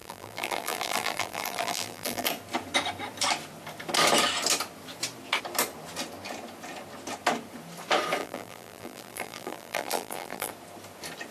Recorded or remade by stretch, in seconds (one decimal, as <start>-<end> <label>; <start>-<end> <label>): 0.0-2.3 remade; 2.3-8.2 recorded; 8.2-10.5 remade; 10.5-11.3 recorded